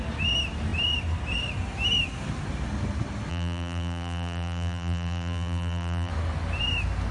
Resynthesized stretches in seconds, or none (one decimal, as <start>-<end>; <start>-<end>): 3.3-6.1